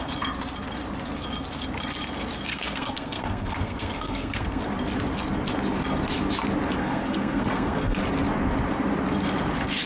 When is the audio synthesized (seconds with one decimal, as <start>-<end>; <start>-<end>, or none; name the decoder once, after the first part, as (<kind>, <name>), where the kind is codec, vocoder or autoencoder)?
2.5-4.6 (codec, SNAC); 6.8-8.0